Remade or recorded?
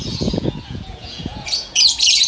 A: remade